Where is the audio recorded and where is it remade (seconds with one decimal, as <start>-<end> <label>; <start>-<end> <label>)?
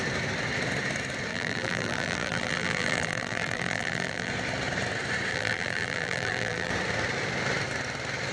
0.0-1.3 recorded; 1.3-4.3 remade; 4.3-5.3 recorded; 5.3-6.7 remade; 6.7-8.3 recorded